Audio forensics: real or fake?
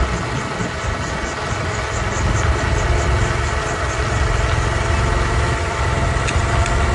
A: real